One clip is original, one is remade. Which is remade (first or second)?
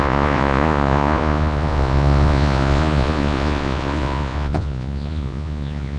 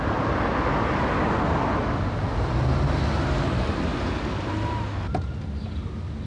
first